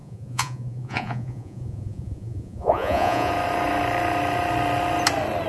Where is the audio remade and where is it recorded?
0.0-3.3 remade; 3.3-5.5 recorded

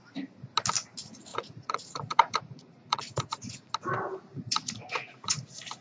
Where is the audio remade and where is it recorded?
0.0-1.3 recorded; 1.3-3.7 remade; 3.7-4.3 recorded; 4.3-5.8 remade

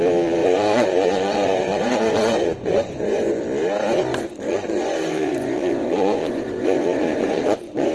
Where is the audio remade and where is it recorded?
0.0-0.4 recorded; 0.4-3.4 remade; 3.4-4.1 recorded; 4.1-7.9 remade

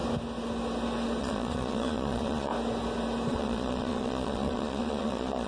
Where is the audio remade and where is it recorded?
0.0-1.2 recorded; 1.2-2.5 remade; 2.5-3.3 recorded; 3.3-5.5 remade

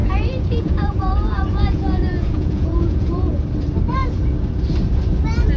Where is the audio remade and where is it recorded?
0.0-3.4 remade; 3.4-5.6 recorded